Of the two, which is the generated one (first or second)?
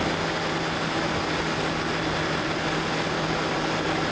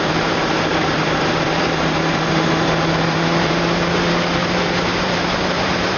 second